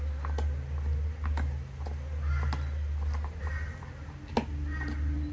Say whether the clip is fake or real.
real